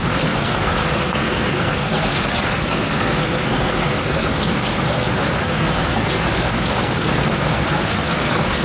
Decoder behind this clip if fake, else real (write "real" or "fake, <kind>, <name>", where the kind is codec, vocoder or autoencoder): fake, codec, SNAC